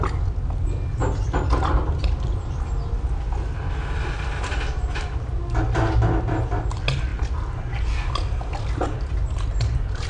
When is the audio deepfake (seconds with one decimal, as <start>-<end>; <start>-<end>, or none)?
none